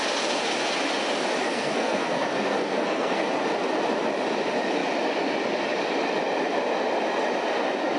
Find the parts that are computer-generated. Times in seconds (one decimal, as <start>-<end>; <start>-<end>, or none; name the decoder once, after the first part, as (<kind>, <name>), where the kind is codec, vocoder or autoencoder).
1.4-3.3 (codec, SNAC)